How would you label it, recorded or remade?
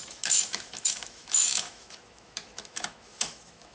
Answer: remade